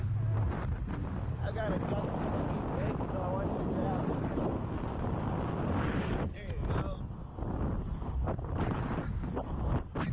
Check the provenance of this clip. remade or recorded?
recorded